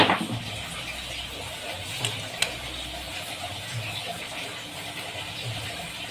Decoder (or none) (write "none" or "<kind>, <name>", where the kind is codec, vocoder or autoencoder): none